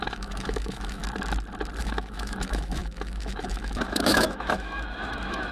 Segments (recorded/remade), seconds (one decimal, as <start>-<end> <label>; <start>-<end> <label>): 0.0-1.0 remade; 1.0-1.8 recorded; 1.8-5.5 remade